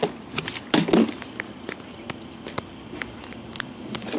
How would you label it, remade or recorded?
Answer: recorded